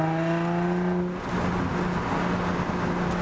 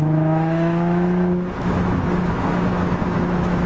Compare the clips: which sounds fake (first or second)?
second